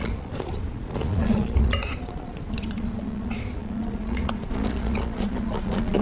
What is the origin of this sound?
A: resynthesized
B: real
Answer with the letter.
A